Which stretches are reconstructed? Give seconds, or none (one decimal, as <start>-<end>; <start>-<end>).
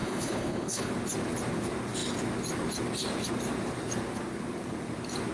0.0-0.9